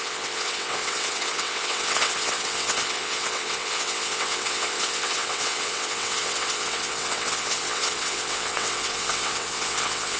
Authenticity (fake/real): fake